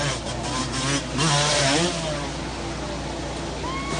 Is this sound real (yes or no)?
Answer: yes